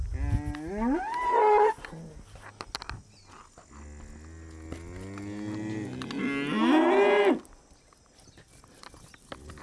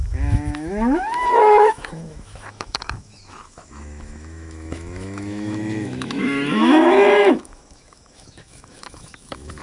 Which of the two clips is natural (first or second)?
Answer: first